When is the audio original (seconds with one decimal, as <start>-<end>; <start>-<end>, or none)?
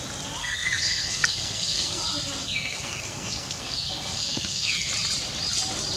0.0-0.4; 2.0-2.4; 4.9-6.0